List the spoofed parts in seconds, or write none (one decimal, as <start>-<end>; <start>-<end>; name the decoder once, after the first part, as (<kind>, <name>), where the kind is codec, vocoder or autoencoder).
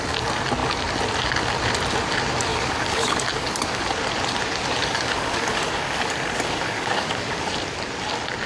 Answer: 2.5-3.8 (codec, DAC); 4.8-7.5